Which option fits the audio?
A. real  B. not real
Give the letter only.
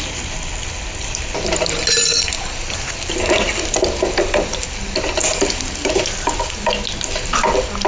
A